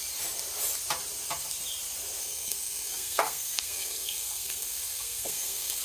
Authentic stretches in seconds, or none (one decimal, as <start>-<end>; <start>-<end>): 0.0-2.2